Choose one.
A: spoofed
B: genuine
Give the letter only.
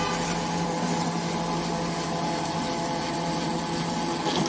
B